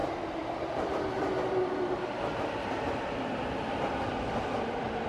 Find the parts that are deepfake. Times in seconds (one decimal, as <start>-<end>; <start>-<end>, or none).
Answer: 0.7-1.3; 4.4-5.1